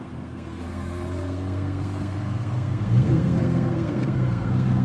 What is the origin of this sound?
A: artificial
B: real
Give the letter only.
A